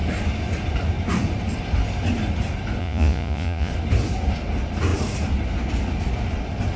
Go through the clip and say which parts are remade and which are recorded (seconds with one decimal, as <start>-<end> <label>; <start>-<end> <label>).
0.0-2.8 recorded; 2.8-3.7 remade; 3.7-6.8 recorded

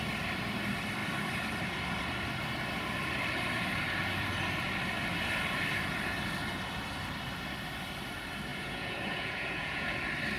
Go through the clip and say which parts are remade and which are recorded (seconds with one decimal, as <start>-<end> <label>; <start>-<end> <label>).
0.0-8.5 recorded; 8.5-9.9 remade; 9.9-10.4 recorded